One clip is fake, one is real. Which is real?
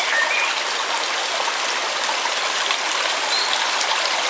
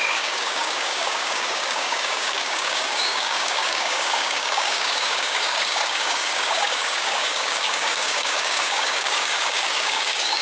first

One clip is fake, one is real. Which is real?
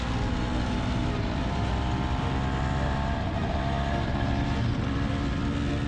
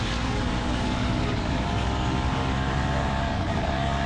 first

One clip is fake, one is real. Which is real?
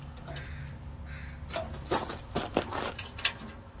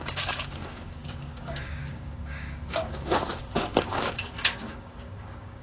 first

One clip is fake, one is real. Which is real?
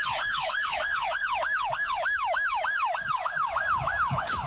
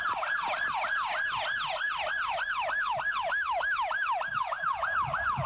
second